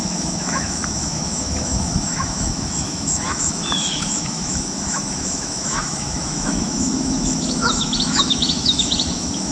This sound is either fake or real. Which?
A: fake